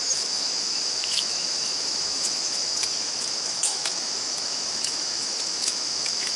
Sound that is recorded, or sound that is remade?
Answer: remade